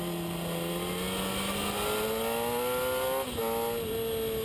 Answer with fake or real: real